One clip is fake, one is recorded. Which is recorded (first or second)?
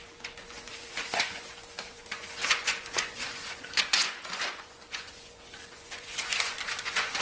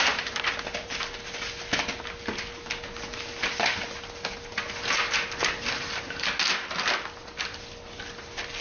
second